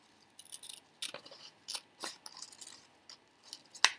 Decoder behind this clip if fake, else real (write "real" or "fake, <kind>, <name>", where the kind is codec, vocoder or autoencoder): real